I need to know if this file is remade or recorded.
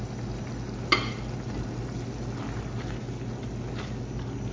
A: recorded